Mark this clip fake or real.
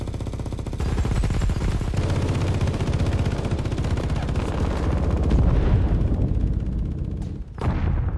real